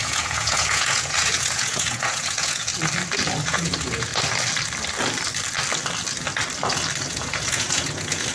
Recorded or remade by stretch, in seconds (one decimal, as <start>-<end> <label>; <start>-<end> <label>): 0.0-2.7 remade; 2.7-3.4 recorded; 3.4-4.1 remade; 4.1-7.1 recorded; 7.1-8.3 remade